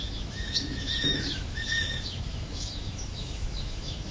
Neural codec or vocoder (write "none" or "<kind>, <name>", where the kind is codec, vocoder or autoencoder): autoencoder, DAC-VAE